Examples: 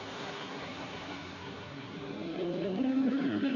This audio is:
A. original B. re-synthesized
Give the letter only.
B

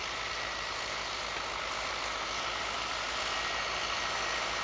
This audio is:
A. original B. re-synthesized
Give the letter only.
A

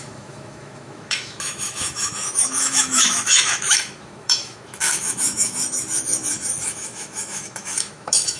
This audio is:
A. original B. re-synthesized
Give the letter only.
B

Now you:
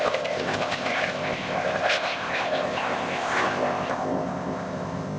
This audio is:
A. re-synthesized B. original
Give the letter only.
A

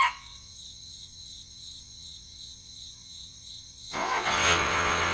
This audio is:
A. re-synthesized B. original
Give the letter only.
A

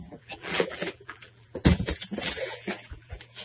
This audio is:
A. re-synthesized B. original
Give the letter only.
A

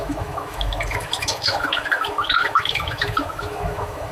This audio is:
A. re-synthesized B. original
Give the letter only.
A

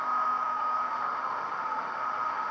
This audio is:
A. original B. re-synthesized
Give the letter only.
B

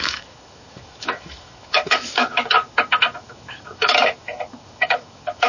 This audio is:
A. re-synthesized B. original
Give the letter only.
A